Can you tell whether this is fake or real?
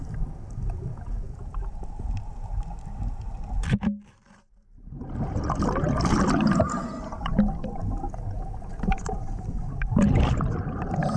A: real